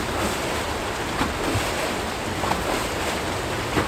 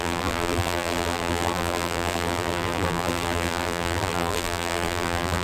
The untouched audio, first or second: first